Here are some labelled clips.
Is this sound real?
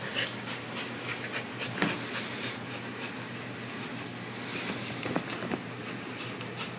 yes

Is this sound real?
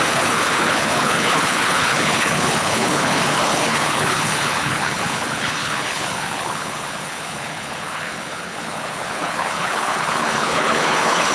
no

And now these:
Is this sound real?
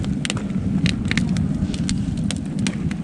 yes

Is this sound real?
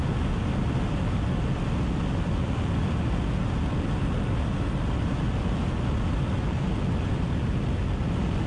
yes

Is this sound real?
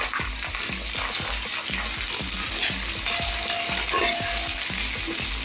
yes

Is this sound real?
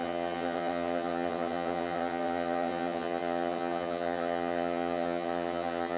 no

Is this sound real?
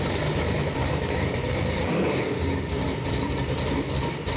no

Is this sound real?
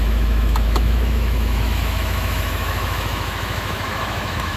no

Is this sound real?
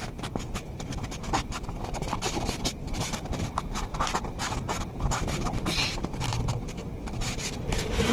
no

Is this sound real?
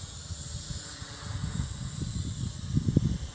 yes